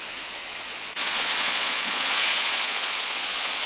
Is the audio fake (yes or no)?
yes